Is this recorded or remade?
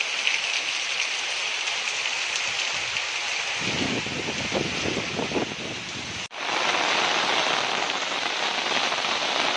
recorded